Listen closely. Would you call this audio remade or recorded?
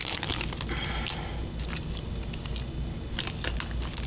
recorded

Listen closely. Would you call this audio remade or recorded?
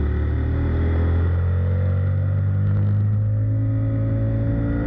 recorded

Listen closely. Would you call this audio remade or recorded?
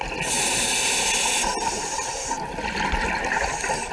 recorded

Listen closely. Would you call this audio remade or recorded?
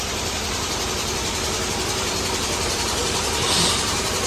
remade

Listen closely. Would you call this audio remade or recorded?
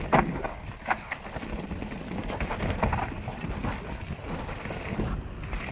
recorded